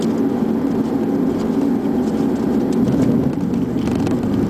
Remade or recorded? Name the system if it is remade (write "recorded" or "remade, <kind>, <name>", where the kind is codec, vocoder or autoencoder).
recorded